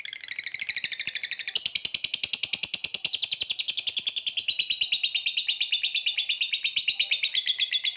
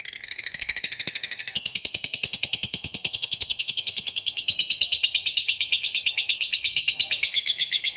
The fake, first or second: second